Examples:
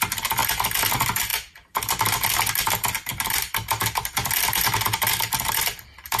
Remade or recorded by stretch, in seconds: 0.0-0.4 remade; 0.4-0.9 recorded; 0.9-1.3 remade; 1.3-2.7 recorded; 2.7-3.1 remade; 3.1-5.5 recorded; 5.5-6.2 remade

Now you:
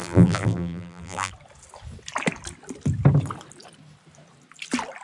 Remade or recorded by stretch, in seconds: 0.0-1.3 remade; 1.3-5.0 recorded